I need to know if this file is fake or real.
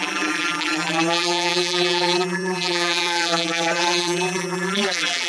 fake